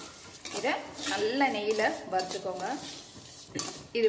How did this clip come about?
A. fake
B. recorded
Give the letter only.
B